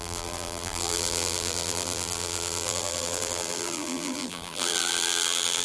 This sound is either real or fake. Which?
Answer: fake